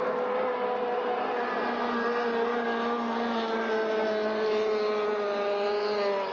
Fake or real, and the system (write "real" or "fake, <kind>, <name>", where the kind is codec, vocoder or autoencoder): real